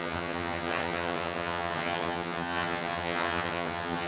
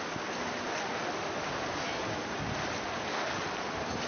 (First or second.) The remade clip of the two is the first